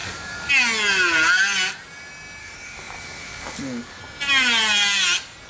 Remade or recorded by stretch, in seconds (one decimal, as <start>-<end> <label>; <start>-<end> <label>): 0.0-0.5 remade; 0.5-2.4 recorded; 2.4-4.0 remade; 4.0-5.5 recorded